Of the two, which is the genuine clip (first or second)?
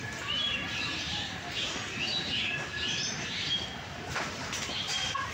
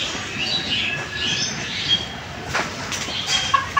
second